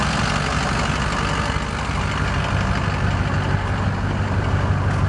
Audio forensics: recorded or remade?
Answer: recorded